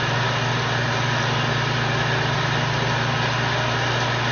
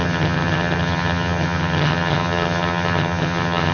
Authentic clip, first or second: first